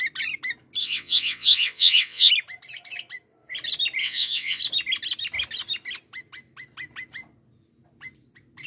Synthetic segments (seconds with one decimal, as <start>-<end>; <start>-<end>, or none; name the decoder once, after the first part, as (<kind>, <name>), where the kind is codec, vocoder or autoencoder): 0.8-2.3 (vocoder, WaveNeXt); 4.0-4.6